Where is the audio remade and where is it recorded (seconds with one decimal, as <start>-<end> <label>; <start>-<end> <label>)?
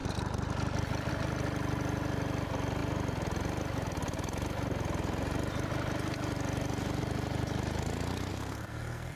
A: 0.0-8.3 recorded; 8.3-9.2 remade